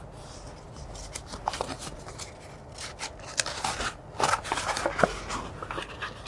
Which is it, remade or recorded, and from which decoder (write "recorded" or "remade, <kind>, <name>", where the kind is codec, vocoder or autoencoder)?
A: recorded